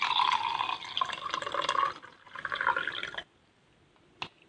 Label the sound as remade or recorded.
recorded